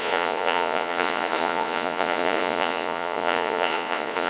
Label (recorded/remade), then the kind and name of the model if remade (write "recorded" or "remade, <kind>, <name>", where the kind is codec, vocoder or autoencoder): remade, vocoder, Vocos